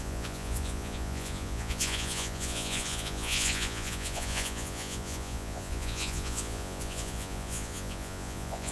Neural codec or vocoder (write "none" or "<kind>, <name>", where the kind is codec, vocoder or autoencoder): vocoder, Vocos